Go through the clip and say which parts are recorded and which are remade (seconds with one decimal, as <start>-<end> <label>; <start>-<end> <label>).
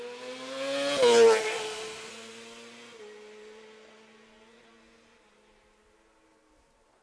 0.0-1.4 recorded; 1.4-2.1 remade; 2.1-7.0 recorded